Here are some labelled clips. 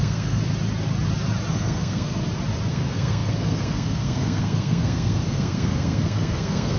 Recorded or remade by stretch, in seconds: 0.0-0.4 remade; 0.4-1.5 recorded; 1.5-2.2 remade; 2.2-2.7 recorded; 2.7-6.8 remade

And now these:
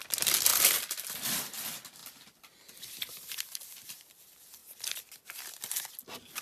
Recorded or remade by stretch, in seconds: 0.0-6.4 remade